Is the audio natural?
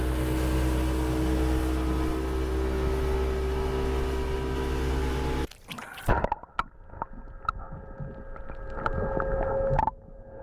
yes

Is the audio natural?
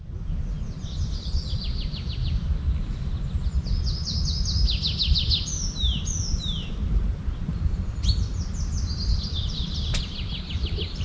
yes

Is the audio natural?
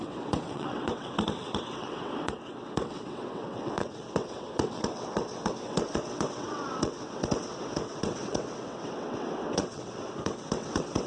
no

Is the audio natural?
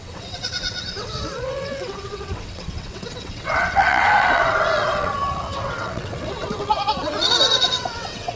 no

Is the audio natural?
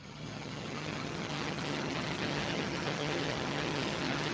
no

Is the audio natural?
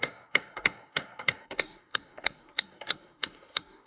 no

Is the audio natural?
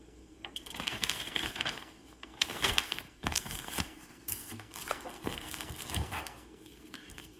no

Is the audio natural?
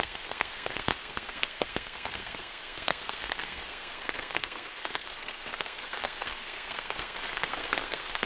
no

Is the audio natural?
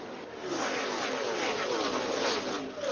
yes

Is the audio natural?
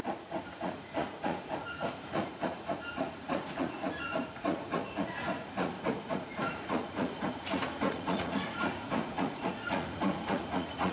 no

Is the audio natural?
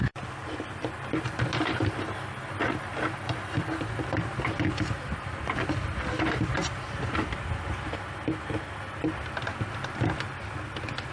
yes